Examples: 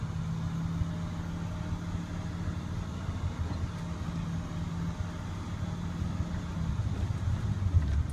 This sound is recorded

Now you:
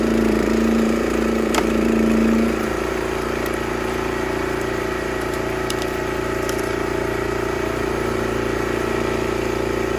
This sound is remade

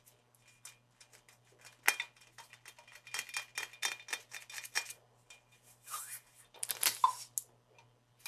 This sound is recorded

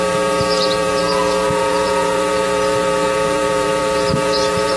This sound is remade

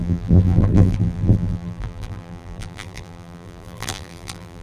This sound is remade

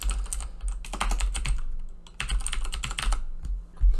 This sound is recorded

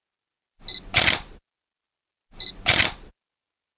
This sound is recorded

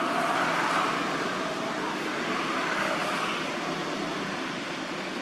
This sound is remade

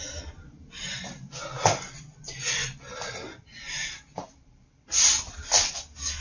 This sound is recorded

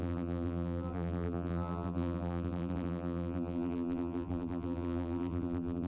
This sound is remade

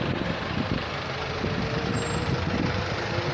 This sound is remade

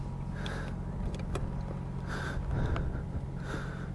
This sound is recorded